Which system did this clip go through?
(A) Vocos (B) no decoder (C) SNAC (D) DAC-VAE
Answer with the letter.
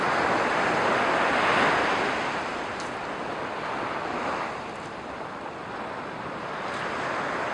B